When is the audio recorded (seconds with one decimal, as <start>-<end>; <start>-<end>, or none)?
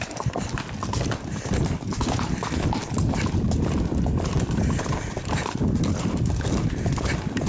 0.0-7.5